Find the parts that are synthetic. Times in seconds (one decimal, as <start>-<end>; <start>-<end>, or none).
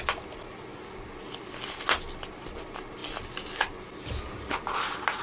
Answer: none